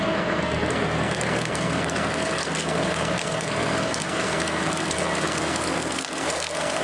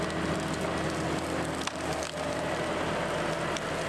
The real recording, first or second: second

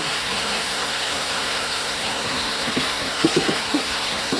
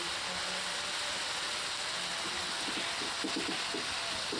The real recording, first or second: second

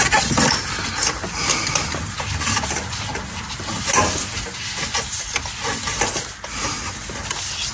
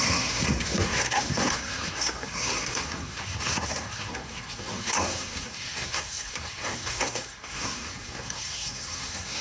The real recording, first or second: first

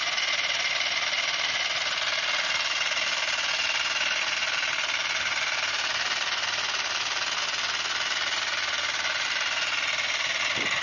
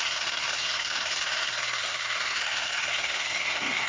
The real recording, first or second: first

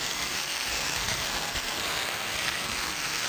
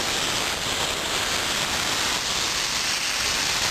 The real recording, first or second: second